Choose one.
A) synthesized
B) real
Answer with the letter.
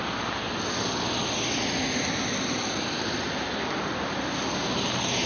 B